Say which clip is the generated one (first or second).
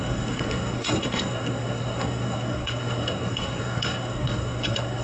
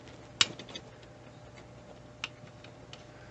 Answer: first